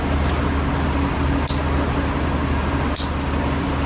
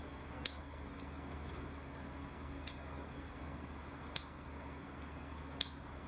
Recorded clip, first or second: first